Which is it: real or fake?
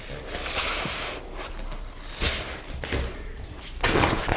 real